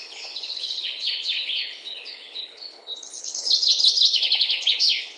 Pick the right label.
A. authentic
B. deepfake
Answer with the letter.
B